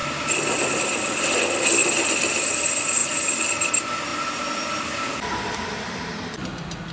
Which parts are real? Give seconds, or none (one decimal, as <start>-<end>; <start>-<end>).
0.0-1.8; 2.6-3.0; 3.5-4.1; 6.0-6.9